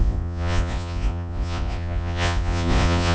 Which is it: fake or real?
fake